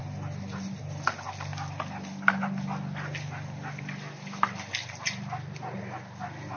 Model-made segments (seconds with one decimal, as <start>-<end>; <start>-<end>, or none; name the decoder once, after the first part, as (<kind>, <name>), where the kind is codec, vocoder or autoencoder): 1.5-4.7 (vocoder, BigVGAN v2)